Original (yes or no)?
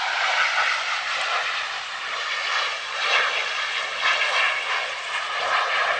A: yes